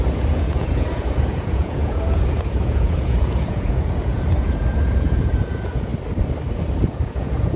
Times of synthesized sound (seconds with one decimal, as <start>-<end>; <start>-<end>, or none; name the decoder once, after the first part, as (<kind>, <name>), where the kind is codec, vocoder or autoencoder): 0.0-5.9 (vocoder, Vocos); 6.8-7.6